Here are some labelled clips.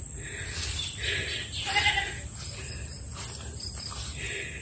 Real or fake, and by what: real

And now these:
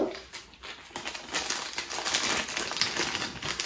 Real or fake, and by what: real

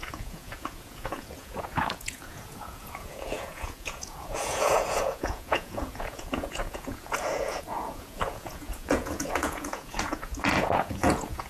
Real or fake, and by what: fake, vocoder, Vocos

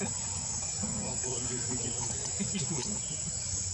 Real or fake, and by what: fake, vocoder, Vocos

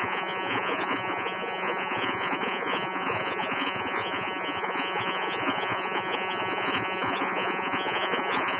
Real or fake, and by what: fake, vocoder, Vocos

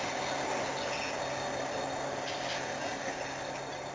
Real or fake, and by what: real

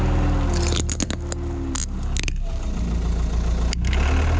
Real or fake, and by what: real